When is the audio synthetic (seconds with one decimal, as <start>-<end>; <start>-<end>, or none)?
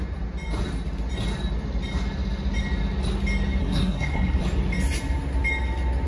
3.6-4.4